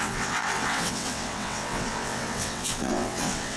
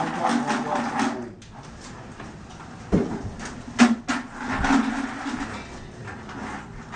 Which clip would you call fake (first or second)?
first